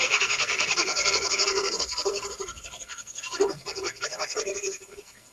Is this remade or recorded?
remade